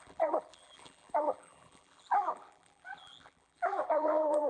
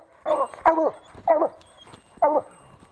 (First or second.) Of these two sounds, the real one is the second